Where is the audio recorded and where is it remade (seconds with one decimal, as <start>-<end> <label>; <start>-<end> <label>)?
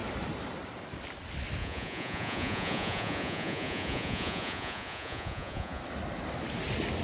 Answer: 0.0-1.6 recorded; 1.6-5.8 remade; 5.8-7.0 recorded